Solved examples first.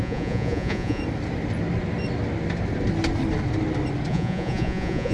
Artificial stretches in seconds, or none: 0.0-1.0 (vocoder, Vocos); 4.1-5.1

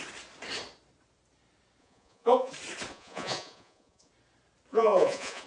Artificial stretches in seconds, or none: 1.8-2.5 (vocoder, Vocos); 2.9-4.1; 4.7-5.5

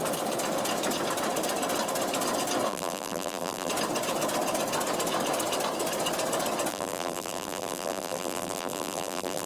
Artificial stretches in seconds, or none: 2.7-3.7 (vocoder, BigVGAN v2); 6.7-9.5

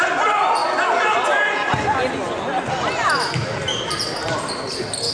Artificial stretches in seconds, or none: 3.7-4.5 (vocoder, BigVGAN v2)